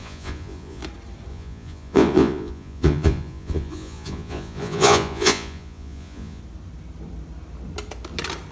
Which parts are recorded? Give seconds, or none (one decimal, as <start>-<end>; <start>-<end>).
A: 0.8-1.3; 6.4-8.5